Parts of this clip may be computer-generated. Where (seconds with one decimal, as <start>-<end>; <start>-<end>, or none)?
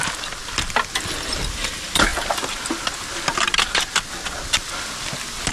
none